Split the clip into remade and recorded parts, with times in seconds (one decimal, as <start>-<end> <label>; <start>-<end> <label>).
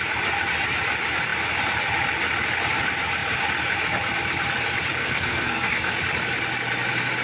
0.0-5.0 recorded; 5.0-5.9 remade; 5.9-7.2 recorded